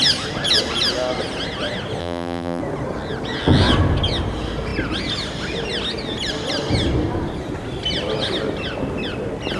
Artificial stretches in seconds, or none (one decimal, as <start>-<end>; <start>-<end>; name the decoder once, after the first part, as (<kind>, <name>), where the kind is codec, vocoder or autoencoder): 2.0-2.6 (vocoder, BigVGAN v2)